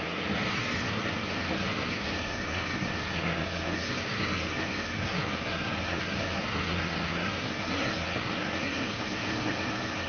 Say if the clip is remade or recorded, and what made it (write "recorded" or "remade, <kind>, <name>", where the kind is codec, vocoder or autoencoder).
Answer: remade, codec, SNAC